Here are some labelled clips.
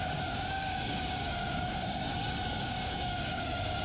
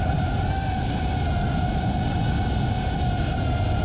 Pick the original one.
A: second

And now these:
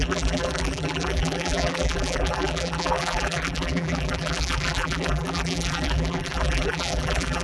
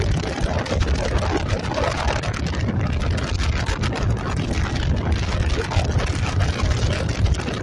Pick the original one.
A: second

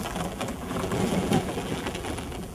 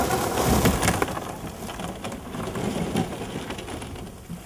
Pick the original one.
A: second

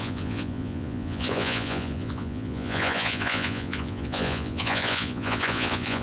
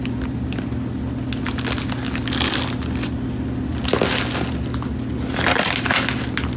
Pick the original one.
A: second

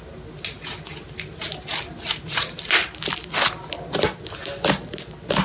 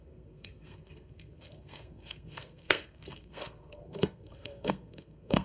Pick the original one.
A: first